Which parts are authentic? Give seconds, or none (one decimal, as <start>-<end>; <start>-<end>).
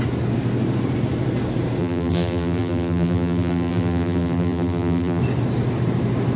0.0-1.8; 5.2-6.4